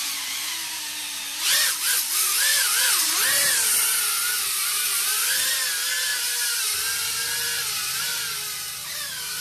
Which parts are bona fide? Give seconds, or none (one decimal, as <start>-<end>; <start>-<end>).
0.0-9.4